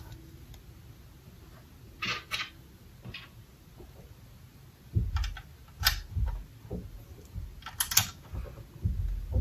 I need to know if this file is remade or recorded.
recorded